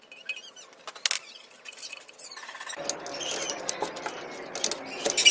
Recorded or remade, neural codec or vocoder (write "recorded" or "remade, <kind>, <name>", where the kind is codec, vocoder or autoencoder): recorded